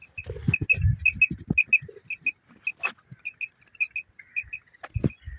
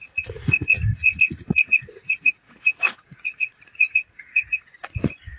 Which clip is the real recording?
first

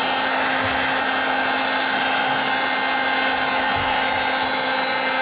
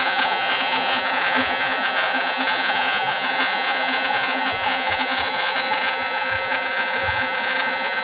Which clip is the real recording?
first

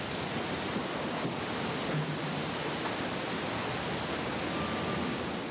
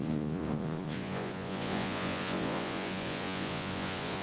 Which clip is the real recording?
first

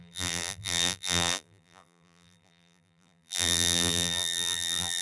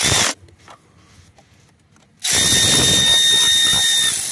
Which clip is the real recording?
second